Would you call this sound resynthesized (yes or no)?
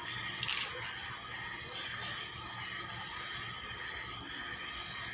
no